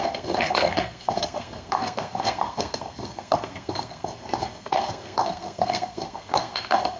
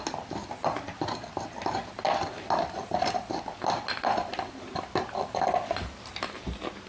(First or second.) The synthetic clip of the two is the first